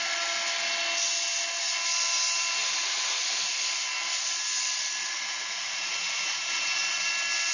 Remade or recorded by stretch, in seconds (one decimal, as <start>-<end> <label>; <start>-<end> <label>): 0.0-5.0 recorded; 5.0-7.1 remade; 7.1-7.5 recorded

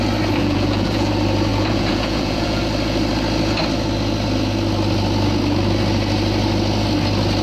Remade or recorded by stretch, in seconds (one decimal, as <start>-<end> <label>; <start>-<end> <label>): 0.0-0.4 recorded; 0.4-1.1 remade; 1.1-1.5 recorded; 1.5-2.6 remade; 2.6-7.4 recorded

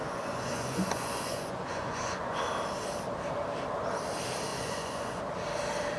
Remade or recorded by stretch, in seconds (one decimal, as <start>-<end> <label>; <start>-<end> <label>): 0.0-2.4 remade; 2.4-4.5 recorded; 4.5-5.2 remade; 5.2-6.0 recorded

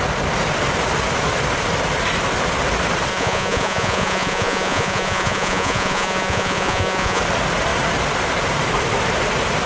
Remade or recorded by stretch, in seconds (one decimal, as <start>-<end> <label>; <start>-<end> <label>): 0.0-3.1 recorded; 3.1-7.2 remade; 7.2-9.7 recorded

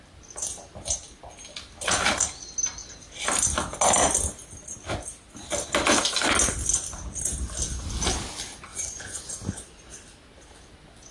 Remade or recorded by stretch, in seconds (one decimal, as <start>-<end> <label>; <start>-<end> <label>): 0.0-8.7 recorded; 8.7-9.3 remade; 9.3-11.1 recorded

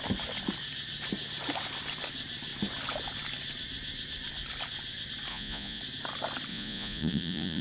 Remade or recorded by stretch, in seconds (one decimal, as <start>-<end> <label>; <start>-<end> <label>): 0.0-5.3 recorded; 5.3-5.8 remade; 5.8-6.5 recorded; 6.5-7.6 remade

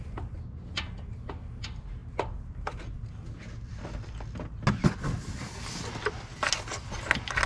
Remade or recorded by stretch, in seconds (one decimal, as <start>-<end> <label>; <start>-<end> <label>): 0.0-7.5 recorded

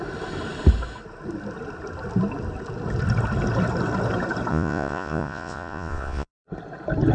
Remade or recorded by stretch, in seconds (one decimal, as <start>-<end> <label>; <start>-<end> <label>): 0.0-4.5 recorded; 4.5-6.3 remade; 6.3-7.1 recorded